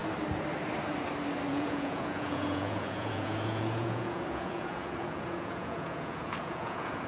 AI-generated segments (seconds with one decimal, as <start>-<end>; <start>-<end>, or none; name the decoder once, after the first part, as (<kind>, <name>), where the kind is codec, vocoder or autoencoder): 1.5-7.1 (vocoder, Vocos)

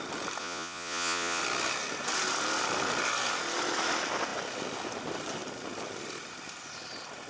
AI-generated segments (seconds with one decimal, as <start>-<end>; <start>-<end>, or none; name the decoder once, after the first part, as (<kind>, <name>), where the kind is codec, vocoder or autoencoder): 0.4-1.4 (vocoder, Vocos)

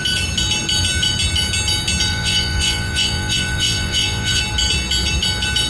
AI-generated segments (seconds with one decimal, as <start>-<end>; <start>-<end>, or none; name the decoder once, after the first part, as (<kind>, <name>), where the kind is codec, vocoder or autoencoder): 2.1-4.4 (vocoder, Vocos)